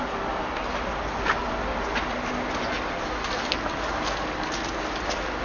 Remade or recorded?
recorded